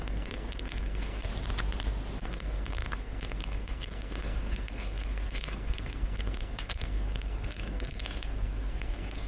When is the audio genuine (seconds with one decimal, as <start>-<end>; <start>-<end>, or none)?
1.3-2.2